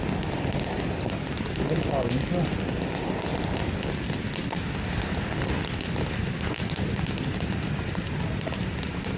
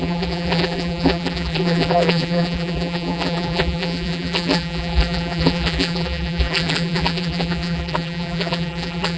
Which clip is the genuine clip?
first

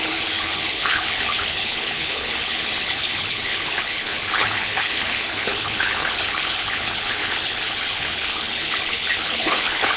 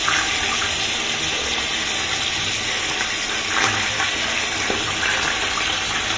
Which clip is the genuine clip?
second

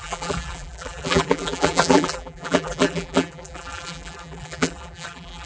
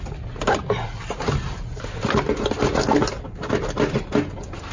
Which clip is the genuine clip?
second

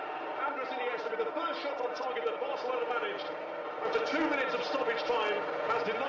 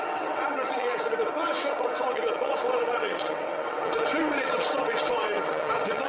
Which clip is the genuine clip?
first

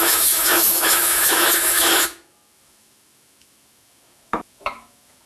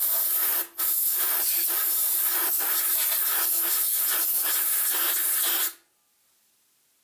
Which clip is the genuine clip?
second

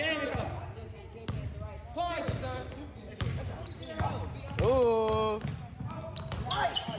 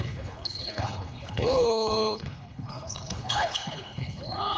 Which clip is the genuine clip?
first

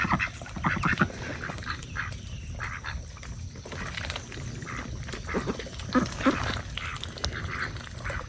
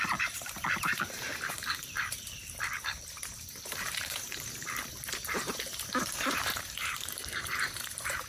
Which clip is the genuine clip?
first